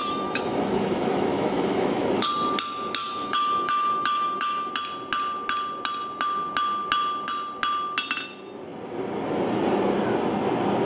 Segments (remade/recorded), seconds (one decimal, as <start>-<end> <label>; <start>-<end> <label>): 0.0-2.3 remade; 2.3-3.0 recorded; 3.0-4.7 remade; 4.7-10.9 recorded